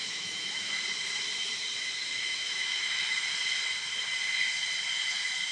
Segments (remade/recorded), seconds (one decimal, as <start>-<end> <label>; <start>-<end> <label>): 0.0-0.8 remade; 0.8-2.0 recorded; 2.0-3.0 remade; 3.0-5.5 recorded